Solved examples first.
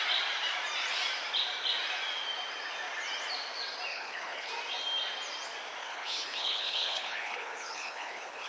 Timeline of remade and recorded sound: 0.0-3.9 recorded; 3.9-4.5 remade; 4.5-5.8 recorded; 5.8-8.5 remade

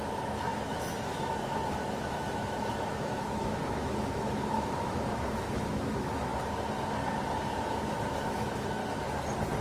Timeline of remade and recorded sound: 0.0-6.3 remade; 6.3-7.6 recorded; 7.6-8.8 remade; 8.8-9.6 recorded

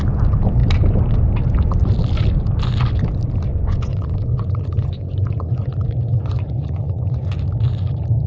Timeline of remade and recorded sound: 0.0-3.5 recorded; 3.5-7.3 remade; 7.3-8.3 recorded

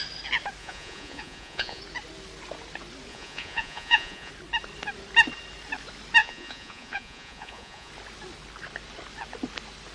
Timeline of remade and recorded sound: 0.0-0.6 recorded; 0.6-1.8 remade; 1.8-3.1 recorded; 3.1-4.3 remade; 4.3-6.2 recorded; 6.2-7.9 remade; 7.9-9.9 recorded

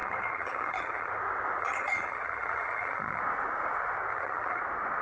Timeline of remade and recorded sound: 0.0-1.1 remade; 1.1-1.6 recorded; 1.6-3.2 remade; 3.2-4.1 recorded; 4.1-4.6 remade; 4.6-5.0 recorded